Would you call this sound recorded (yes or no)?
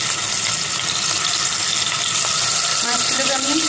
yes